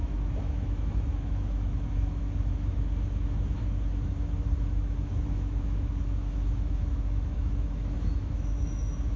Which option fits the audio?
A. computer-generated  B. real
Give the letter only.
A